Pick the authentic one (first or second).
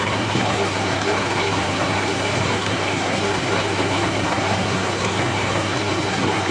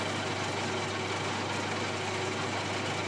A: second